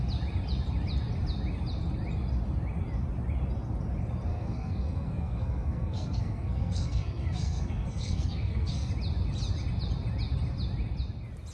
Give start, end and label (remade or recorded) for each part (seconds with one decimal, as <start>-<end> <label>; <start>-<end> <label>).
0.0-4.3 recorded; 4.3-8.9 remade; 8.9-11.5 recorded